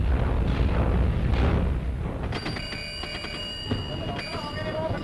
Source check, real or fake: real